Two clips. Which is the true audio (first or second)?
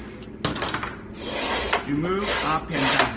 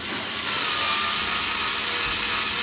first